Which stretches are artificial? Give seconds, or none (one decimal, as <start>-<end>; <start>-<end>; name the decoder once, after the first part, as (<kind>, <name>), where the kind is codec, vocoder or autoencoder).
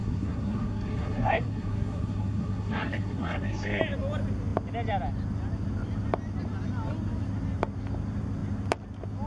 0.0-3.8 (codec, SNAC)